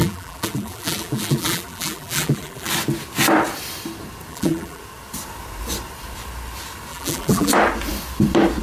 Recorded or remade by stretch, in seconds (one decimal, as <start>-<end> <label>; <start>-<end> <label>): 0.0-2.7 remade; 2.7-4.3 recorded; 4.3-4.8 remade; 4.8-6.9 recorded; 6.9-7.5 remade; 7.5-8.6 recorded